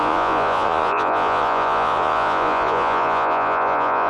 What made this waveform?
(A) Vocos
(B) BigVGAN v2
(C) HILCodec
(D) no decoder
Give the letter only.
A